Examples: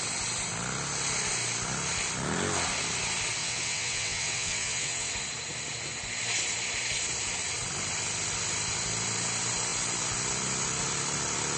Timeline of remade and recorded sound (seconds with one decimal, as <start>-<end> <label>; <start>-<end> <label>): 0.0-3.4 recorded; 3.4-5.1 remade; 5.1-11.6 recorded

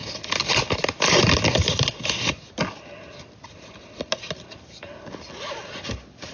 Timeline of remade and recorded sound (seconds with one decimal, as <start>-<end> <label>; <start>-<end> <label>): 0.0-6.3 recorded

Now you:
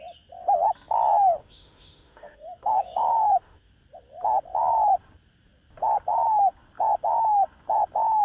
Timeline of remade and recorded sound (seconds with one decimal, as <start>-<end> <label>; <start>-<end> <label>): 0.0-1.4 recorded; 1.4-3.7 remade; 3.7-8.2 recorded

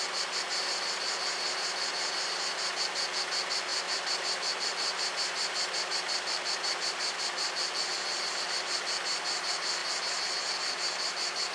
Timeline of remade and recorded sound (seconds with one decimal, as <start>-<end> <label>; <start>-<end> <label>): 0.0-11.5 recorded

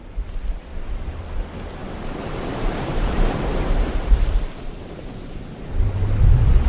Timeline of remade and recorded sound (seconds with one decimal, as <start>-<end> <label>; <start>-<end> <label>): 0.0-0.7 recorded; 0.7-1.2 remade; 1.2-1.8 recorded; 1.8-5.1 remade; 5.1-6.7 recorded

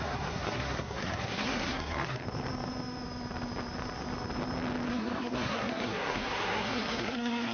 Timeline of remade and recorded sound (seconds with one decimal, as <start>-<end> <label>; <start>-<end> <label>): 0.0-2.2 remade; 2.2-4.9 recorded; 4.9-7.5 remade

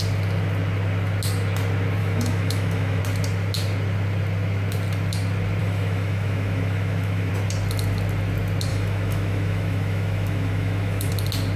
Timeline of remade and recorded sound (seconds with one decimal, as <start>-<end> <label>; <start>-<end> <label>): 0.0-2.0 recorded; 2.0-3.0 remade; 3.0-5.6 recorded; 5.6-7.3 remade; 7.3-8.7 recorded; 8.7-11.1 remade; 11.1-11.6 recorded

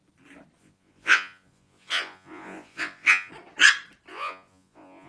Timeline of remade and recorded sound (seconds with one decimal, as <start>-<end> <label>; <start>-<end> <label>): 0.0-0.6 recorded; 0.6-3.3 remade; 3.3-4.1 recorded; 4.1-5.1 remade